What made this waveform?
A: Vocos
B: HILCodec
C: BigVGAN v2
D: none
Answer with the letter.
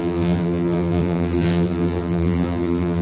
C